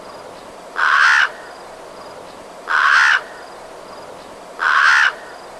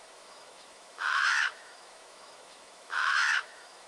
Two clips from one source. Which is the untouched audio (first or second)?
first